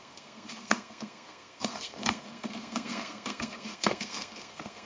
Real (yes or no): no